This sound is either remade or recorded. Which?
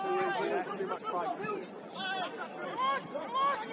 recorded